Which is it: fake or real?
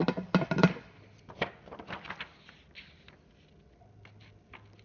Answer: real